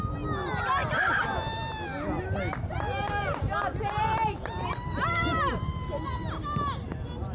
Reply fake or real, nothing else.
real